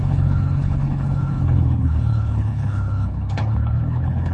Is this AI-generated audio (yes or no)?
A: yes